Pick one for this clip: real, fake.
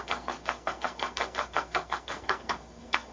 fake